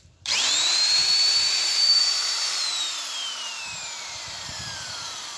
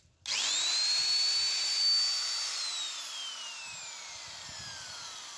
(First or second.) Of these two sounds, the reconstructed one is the first